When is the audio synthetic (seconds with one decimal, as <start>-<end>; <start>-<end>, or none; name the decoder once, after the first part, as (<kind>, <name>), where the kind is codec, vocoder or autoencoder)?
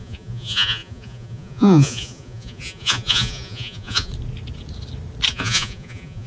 0.0-4.1 (vocoder, Vocos); 5.3-6.3